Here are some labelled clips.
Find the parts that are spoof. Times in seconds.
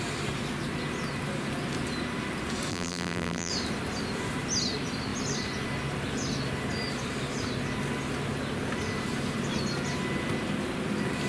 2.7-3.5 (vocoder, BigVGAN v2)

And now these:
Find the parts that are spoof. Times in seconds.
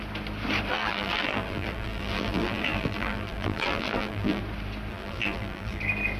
0.7-4.4 (vocoder, BigVGAN v2); 4.9-5.8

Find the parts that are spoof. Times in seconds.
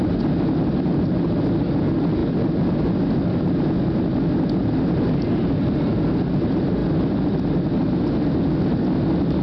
none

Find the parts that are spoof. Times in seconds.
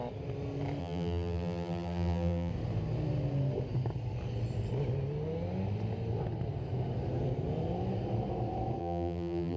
0.8-2.5 (vocoder, BigVGAN v2); 8.8-9.6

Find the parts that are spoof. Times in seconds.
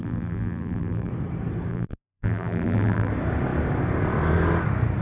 0.0-1.1 (vocoder, BigVGAN v2); 1.7-3.1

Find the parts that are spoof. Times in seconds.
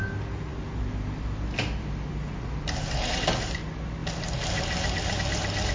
none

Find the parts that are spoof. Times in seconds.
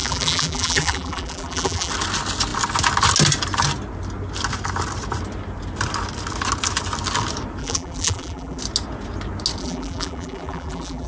0.0-1.9 (vocoder, BigVGAN v2); 7.6-8.6; 9.6-11.1